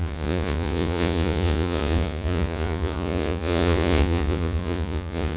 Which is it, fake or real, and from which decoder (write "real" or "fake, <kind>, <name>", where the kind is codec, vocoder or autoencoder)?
fake, vocoder, Vocos